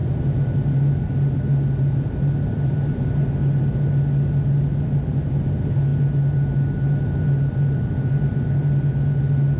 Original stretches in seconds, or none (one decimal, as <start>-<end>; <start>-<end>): 0.0-9.6